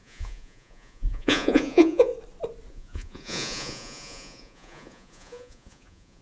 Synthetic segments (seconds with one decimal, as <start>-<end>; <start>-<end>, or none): 0.0-2.1; 2.7-6.2